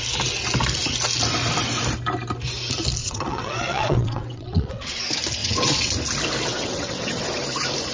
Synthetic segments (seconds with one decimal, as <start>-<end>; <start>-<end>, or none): 3.0-5.0; 5.4-5.9; 6.5-7.2